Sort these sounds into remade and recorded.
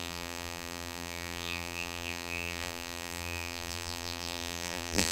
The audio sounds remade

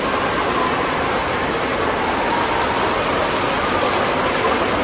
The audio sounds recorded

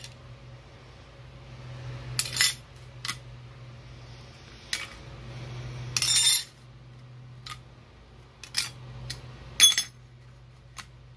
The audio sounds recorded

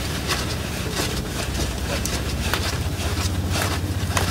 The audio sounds remade